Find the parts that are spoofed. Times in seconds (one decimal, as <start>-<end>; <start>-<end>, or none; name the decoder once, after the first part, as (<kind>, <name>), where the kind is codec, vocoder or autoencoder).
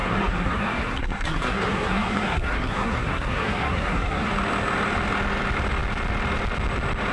0.0-4.3 (codec, SNAC)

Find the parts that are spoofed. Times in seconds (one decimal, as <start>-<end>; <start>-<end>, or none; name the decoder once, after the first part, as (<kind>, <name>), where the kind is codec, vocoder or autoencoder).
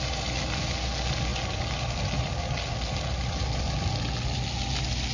none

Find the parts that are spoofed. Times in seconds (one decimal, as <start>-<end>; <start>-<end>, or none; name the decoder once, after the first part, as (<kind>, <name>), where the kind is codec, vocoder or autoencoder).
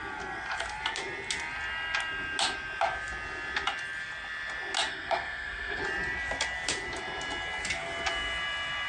4.9-5.8 (codec, SNAC)